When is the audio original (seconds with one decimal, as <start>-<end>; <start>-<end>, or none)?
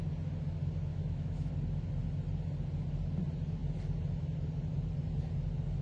0.0-0.9; 1.5-5.8